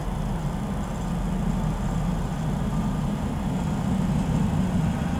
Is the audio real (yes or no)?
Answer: yes